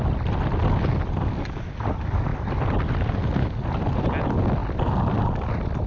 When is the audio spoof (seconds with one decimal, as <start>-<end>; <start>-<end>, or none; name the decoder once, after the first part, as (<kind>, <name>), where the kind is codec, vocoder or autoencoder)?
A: none